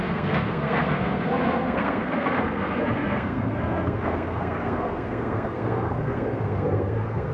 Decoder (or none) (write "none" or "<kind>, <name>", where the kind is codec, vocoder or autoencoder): codec, SNAC